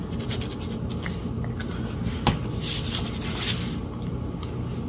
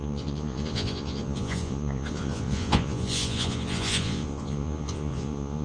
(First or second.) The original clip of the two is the first